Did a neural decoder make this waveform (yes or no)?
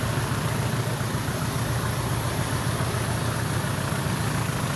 no